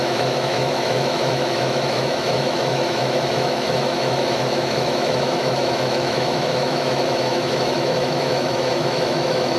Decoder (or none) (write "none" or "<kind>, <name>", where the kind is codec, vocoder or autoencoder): autoencoder, DAC-VAE